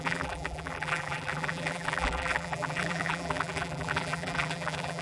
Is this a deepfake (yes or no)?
yes